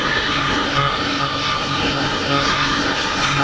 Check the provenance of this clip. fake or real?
fake